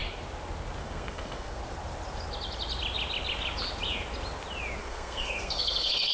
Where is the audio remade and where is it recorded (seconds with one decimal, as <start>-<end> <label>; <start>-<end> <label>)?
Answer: 0.0-0.8 recorded; 0.8-1.6 remade; 1.6-4.8 recorded; 4.8-6.1 remade